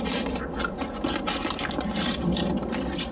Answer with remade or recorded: recorded